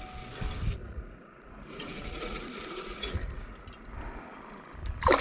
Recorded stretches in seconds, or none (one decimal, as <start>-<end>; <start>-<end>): 0.0-0.8; 3.9-5.2